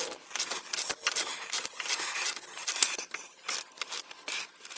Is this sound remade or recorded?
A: recorded